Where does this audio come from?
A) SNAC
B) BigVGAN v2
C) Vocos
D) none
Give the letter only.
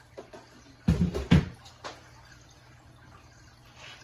D